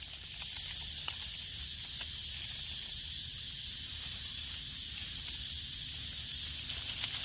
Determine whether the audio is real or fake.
real